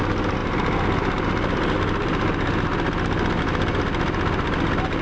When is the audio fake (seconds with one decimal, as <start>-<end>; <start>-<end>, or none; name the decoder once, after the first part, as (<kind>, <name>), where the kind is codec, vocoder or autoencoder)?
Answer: none